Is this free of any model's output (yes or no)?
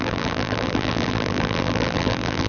no